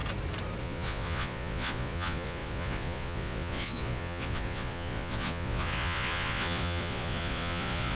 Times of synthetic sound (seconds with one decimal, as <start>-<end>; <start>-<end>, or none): 0.6-8.0